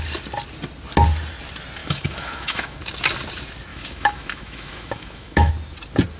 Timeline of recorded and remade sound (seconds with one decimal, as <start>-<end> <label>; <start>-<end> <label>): 0.0-1.8 recorded; 1.8-2.8 remade; 2.8-3.7 recorded; 3.7-5.5 remade; 5.5-6.2 recorded